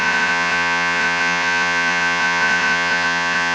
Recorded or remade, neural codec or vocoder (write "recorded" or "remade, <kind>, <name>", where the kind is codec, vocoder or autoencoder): remade, vocoder, Vocos